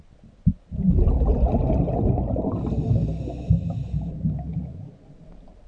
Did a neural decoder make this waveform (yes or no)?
no